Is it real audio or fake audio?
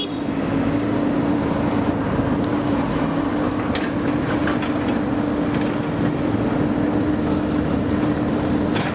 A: real